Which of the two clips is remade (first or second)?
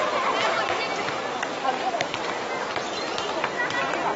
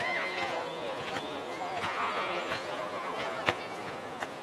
second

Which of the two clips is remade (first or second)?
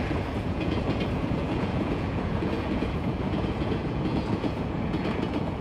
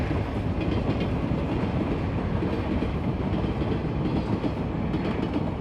first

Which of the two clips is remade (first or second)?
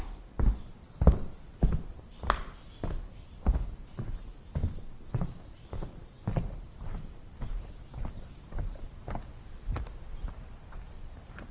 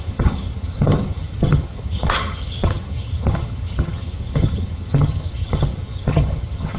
second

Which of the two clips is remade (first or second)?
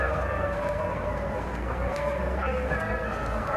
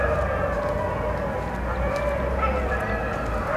first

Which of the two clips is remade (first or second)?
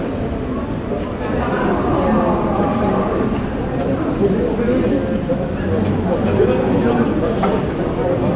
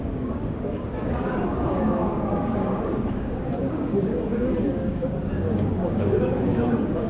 second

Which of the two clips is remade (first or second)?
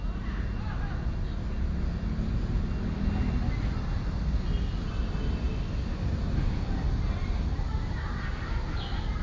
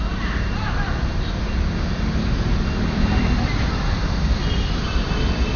second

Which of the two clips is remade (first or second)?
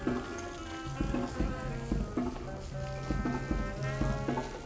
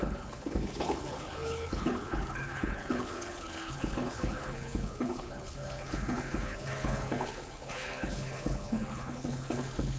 second